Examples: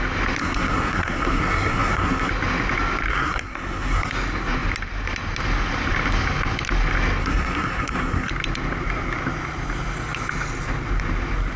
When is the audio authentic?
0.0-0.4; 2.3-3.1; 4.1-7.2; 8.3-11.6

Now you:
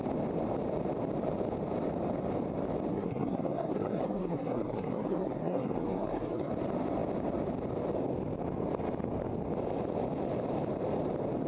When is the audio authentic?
0.0-2.9; 6.5-11.5

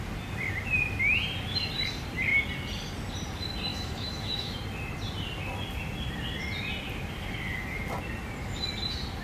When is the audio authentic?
0.0-3.7; 4.6-9.2

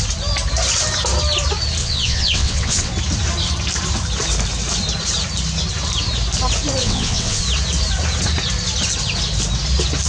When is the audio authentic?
0.0-1.8; 2.9-6.8; 7.4-10.1